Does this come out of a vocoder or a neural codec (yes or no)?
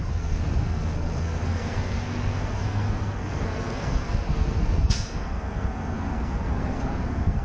yes